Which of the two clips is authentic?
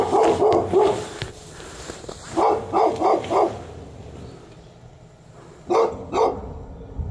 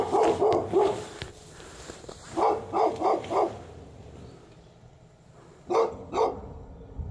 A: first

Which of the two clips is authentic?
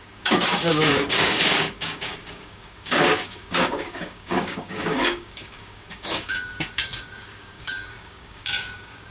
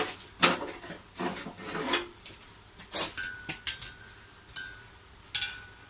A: second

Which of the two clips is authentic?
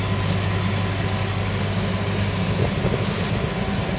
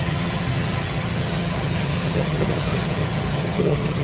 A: first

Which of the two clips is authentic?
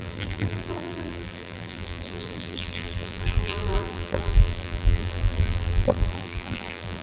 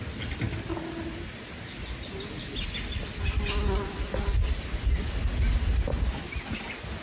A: second